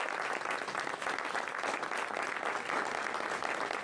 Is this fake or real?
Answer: real